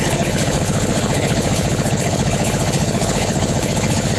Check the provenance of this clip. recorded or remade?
remade